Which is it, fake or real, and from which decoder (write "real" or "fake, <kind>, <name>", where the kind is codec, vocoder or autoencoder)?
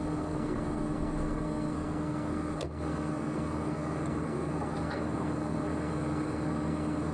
fake, codec, SNAC